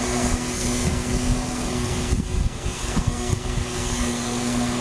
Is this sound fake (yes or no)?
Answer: yes